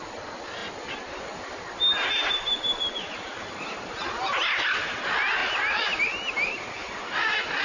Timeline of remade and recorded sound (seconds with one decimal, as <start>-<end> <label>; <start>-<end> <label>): 0.0-7.6 recorded